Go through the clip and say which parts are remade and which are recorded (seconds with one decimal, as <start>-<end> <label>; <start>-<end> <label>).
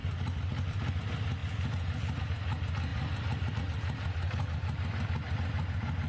0.0-0.9 remade; 0.9-2.9 recorded; 2.9-3.6 remade; 3.6-6.1 recorded